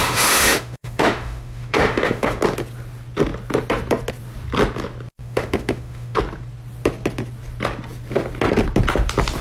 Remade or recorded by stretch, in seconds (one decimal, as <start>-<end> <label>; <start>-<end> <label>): 0.0-2.4 remade; 2.4-5.2 recorded; 5.2-6.2 remade; 6.2-9.4 recorded